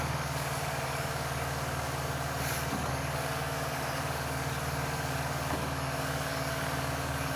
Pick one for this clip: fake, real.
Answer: fake